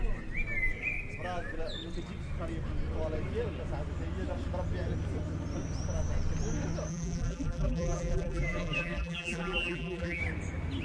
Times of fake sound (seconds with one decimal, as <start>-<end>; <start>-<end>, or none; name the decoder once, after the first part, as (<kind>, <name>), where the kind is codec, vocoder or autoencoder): 6.9-10.2 (vocoder, BigVGAN v2)